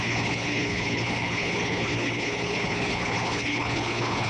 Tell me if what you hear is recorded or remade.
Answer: remade